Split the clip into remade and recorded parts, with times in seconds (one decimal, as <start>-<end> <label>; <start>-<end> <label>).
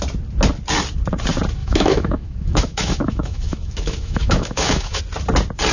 0.0-1.6 recorded; 1.6-5.0 remade; 5.0-5.7 recorded